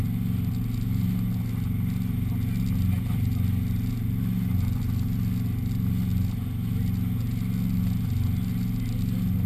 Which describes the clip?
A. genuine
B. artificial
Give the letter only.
A